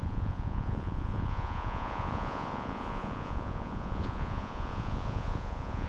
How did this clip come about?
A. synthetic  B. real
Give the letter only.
A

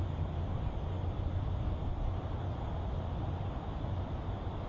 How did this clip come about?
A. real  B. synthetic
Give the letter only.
A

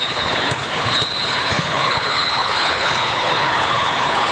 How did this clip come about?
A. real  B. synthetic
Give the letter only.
B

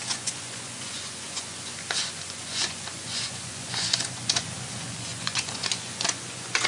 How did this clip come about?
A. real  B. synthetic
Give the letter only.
B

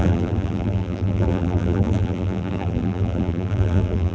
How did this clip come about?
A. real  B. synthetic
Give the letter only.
B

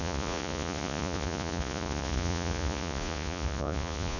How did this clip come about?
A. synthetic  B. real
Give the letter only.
A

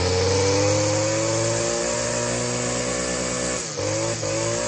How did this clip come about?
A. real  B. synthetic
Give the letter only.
A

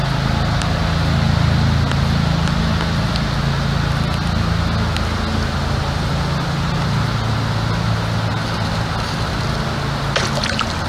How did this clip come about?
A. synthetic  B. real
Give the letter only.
B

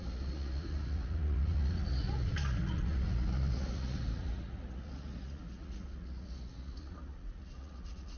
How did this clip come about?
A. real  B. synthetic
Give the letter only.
B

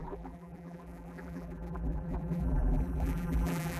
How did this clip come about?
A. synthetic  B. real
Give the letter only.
A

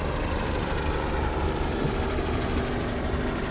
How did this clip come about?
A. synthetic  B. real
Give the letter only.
A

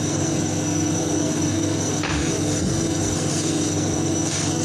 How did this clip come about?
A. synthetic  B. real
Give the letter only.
A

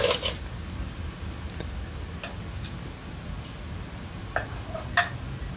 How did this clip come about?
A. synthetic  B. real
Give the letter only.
B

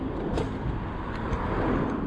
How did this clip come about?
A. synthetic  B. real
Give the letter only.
B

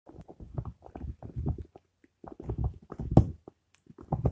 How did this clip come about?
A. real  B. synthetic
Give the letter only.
A